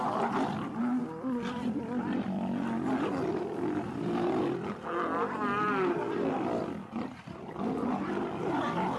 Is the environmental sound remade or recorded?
recorded